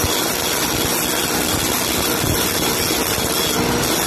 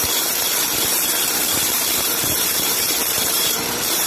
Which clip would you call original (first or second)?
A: first